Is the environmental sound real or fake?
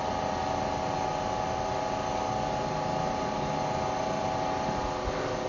real